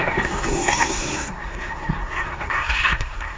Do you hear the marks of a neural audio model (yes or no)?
yes